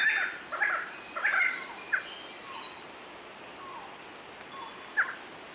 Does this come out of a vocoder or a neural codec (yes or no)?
no